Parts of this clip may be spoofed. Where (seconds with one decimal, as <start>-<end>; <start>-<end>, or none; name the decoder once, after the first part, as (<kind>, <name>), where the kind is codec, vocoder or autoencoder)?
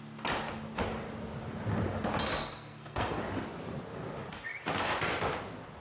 2.4-3.2 (codec, SNAC)